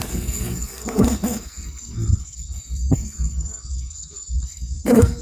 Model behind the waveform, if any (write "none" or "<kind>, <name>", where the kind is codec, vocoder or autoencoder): codec, SNAC